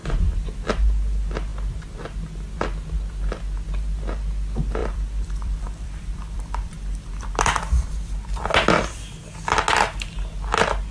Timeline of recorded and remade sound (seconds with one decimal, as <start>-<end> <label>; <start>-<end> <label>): 0.0-4.8 recorded; 4.8-7.6 remade; 7.6-10.9 recorded